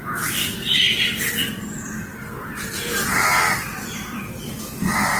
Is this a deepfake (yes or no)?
no